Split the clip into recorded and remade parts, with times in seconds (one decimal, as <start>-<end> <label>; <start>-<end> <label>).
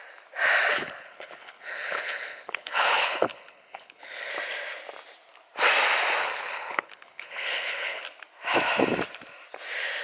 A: 0.0-0.7 recorded; 0.7-4.3 remade; 4.3-6.2 recorded; 6.2-8.0 remade; 8.0-10.0 recorded